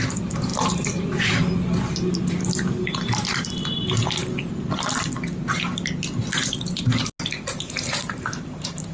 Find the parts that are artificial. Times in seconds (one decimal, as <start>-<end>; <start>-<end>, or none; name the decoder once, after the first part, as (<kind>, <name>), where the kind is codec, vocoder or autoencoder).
7.5-8.9 (vocoder, BigVGAN v2)